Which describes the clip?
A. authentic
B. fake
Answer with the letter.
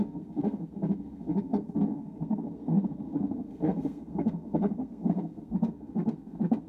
B